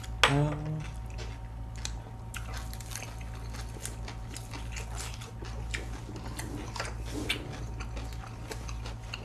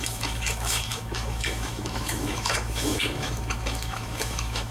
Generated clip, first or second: second